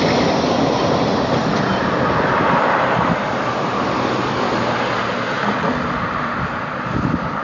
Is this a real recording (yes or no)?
yes